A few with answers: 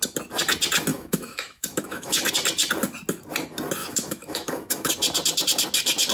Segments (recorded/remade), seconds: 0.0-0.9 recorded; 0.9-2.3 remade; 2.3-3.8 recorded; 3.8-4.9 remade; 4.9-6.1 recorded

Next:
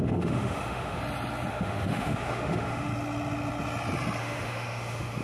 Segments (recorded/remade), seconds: 0.0-1.0 remade; 1.0-1.5 recorded; 1.5-2.9 remade; 2.9-4.2 recorded; 4.2-5.2 remade

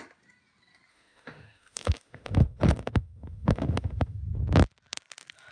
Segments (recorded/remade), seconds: 0.0-0.9 recorded; 0.9-4.2 remade; 4.2-5.5 recorded

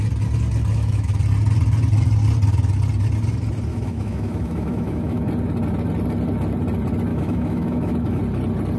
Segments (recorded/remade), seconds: 0.0-0.7 recorded; 0.7-1.2 remade; 1.2-3.7 recorded; 3.7-5.3 remade; 5.3-7.1 recorded; 7.1-8.2 remade; 8.2-8.8 recorded

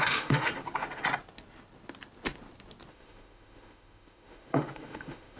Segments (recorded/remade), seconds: 0.0-0.5 remade; 0.5-2.9 recorded; 2.9-5.4 remade